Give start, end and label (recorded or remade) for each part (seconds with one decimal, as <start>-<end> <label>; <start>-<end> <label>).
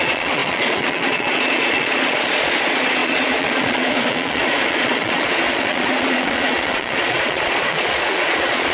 0.0-8.7 remade